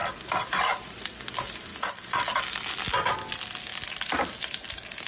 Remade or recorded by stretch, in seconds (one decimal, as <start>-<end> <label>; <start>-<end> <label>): 0.0-5.1 recorded